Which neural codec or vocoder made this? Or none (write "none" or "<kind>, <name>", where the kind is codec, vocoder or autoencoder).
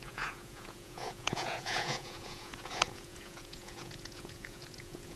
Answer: vocoder, Vocos